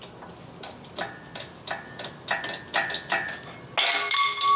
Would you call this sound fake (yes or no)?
no